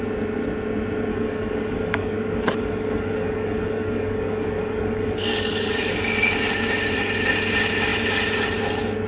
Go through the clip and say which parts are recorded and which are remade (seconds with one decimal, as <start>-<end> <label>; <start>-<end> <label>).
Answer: 0.0-1.1 recorded; 1.1-5.9 remade; 5.9-9.1 recorded